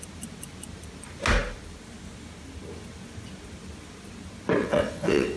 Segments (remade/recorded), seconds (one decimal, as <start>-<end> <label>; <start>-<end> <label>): 0.0-4.6 recorded; 4.6-5.4 remade